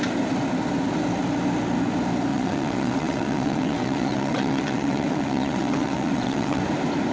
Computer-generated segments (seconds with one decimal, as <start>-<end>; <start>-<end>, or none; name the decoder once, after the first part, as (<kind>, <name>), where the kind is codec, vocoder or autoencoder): 2.3-6.6 (vocoder, WaveNeXt)